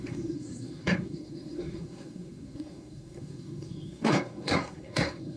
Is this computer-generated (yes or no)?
yes